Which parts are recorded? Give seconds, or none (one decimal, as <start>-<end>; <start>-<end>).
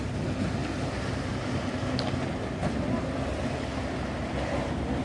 0.0-5.0